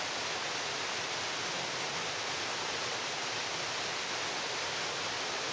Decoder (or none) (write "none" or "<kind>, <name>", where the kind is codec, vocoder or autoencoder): none